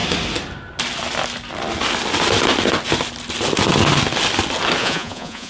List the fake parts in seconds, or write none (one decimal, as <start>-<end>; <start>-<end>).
4.8-5.5